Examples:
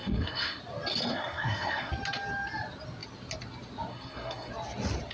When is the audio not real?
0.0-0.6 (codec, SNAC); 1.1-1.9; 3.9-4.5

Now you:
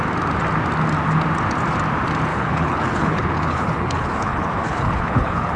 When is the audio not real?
2.3-5.6 (codec, HILCodec)

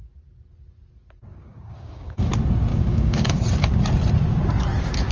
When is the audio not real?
1.3-2.3 (codec, DAC); 2.7-3.4

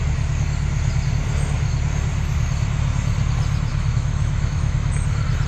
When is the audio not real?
3.7-4.9 (autoencoder, DAC-VAE)

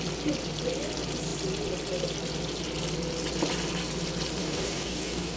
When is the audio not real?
4.4-5.4 (codec, DAC)

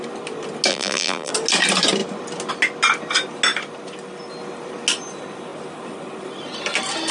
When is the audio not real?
0.7-1.3 (vocoder, BigVGAN v2)